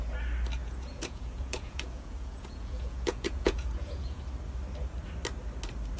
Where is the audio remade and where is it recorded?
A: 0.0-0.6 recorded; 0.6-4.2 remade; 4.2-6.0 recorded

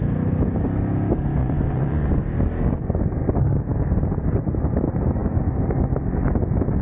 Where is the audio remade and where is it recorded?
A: 0.0-1.4 recorded; 1.4-2.2 remade; 2.2-6.8 recorded

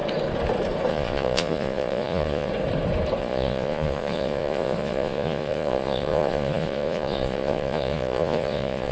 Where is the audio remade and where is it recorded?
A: 0.0-0.9 recorded; 0.9-2.5 remade; 2.5-3.2 recorded; 3.2-8.9 remade

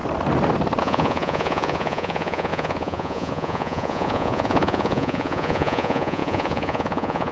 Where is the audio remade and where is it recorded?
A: 0.0-0.8 recorded; 0.8-7.3 remade

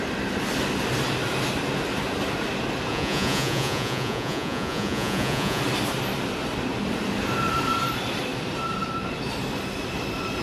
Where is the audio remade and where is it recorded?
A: 0.0-2.9 recorded; 2.9-5.6 remade; 5.6-10.4 recorded

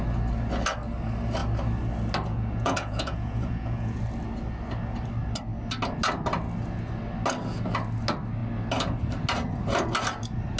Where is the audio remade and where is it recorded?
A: 0.0-2.3 recorded; 2.3-4.0 remade; 4.0-10.6 recorded

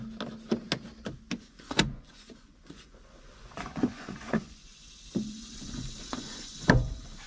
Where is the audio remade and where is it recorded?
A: 0.0-1.4 recorded; 1.4-7.3 remade

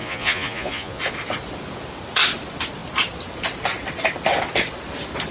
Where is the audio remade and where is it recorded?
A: 0.0-1.0 remade; 1.0-5.3 recorded